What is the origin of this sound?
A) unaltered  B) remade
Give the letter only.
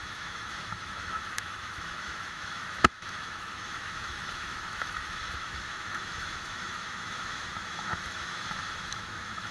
B